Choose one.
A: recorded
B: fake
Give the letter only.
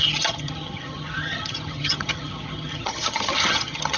B